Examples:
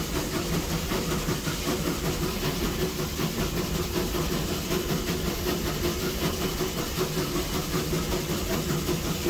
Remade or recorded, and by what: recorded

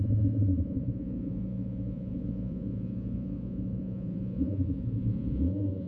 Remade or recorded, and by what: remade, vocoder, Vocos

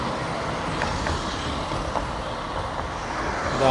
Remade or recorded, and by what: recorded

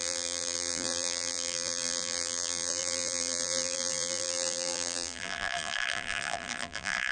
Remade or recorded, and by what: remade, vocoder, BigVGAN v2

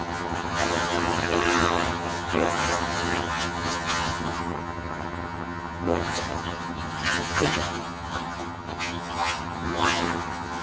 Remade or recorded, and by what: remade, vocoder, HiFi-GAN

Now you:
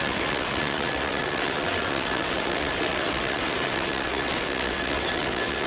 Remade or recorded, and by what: remade, vocoder, WaveNeXt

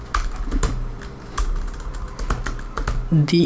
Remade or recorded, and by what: recorded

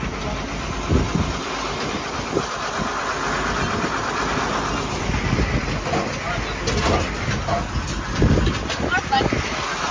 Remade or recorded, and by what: recorded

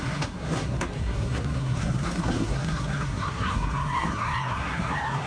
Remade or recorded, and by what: remade, codec, SNAC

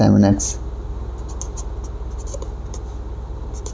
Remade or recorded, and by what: recorded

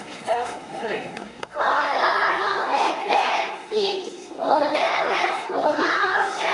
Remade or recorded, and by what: remade, codec, SNAC